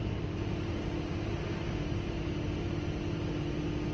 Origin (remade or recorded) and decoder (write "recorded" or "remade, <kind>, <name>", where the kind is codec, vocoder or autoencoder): recorded